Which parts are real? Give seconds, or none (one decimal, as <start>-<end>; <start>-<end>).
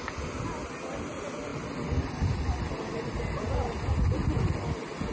0.0-5.1